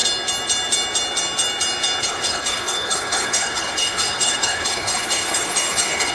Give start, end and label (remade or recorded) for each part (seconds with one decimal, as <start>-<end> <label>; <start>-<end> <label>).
0.0-2.0 recorded; 2.0-6.1 remade